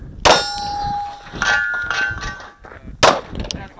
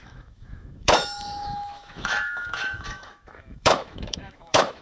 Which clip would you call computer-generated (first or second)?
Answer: second